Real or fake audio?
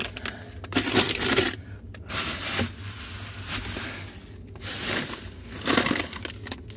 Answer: real